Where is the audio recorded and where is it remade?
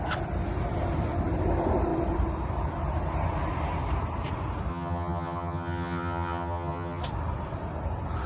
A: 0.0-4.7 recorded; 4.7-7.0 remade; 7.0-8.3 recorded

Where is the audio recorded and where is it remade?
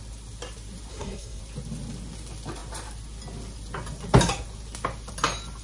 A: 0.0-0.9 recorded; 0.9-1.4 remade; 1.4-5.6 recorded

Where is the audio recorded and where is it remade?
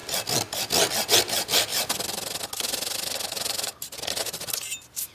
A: 0.0-5.1 recorded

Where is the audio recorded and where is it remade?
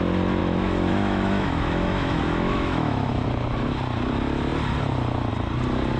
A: 0.0-0.4 recorded; 0.4-3.1 remade; 3.1-6.0 recorded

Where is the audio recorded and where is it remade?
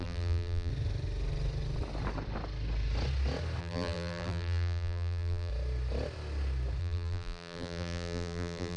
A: 0.0-0.7 remade; 0.7-3.6 recorded; 3.6-5.5 remade; 5.5-6.8 recorded; 6.8-8.8 remade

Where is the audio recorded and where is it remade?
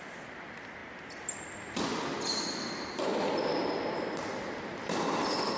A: 0.0-0.8 remade; 0.8-2.4 recorded; 2.4-3.1 remade; 3.1-3.9 recorded; 3.9-5.6 remade